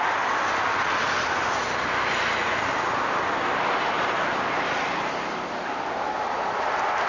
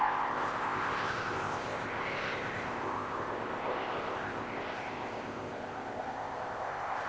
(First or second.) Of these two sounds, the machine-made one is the second